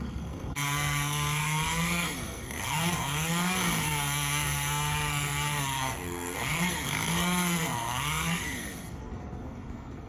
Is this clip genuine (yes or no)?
no